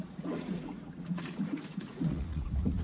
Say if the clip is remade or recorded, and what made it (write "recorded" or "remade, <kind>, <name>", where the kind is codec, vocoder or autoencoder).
remade, vocoder, Vocos